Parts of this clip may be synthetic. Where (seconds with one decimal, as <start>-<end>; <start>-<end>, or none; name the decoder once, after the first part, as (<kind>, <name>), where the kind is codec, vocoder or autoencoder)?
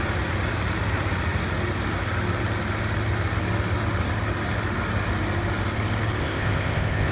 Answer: 6.2-7.1 (codec, ZipCodec)